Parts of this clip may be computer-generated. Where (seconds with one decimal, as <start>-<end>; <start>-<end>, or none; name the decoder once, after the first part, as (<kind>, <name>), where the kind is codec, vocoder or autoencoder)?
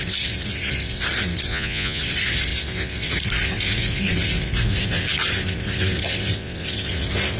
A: 1.5-2.0 (vocoder, Vocos)